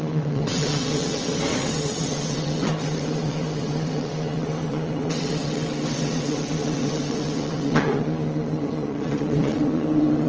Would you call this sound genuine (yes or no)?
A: no